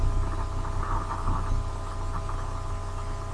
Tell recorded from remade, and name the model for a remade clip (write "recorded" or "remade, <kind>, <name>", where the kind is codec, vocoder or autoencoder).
recorded